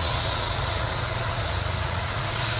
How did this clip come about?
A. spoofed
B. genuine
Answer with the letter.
A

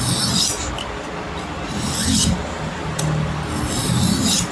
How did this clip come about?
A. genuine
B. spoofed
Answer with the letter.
A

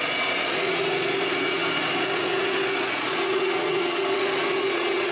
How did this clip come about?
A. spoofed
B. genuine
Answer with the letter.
A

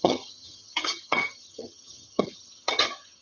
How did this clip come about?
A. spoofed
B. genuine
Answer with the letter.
A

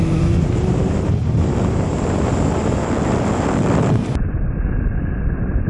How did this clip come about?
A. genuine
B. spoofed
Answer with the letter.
A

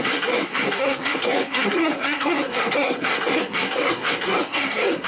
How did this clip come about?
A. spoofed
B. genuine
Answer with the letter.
A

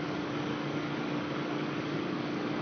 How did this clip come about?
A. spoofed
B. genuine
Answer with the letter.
A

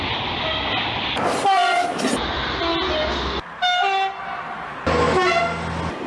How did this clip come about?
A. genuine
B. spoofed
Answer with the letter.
A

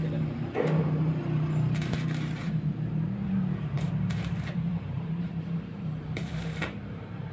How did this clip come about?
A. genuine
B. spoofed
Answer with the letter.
B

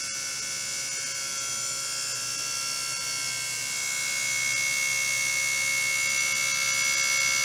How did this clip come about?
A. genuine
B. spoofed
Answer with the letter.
A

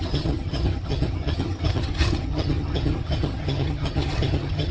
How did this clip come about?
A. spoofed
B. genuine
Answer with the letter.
A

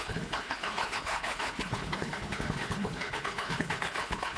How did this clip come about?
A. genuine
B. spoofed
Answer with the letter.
B